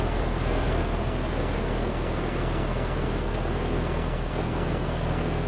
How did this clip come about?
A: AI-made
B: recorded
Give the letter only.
A